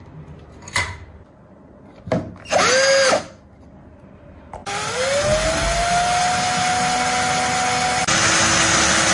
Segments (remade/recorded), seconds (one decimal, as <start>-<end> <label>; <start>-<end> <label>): 0.0-9.1 recorded